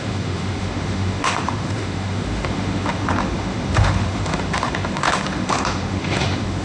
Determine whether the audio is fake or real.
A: fake